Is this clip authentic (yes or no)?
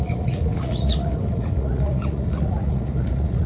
no